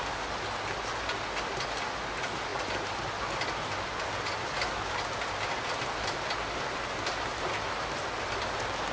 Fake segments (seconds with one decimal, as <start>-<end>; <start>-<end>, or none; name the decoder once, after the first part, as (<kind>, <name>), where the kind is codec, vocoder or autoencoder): none